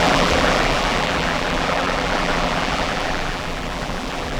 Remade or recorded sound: remade